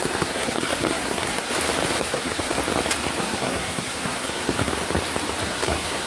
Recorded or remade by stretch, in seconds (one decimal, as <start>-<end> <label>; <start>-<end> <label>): 0.0-1.5 remade; 1.5-2.0 recorded; 2.0-2.6 remade; 2.6-3.2 recorded; 3.2-4.7 remade; 4.7-5.4 recorded; 5.4-6.1 remade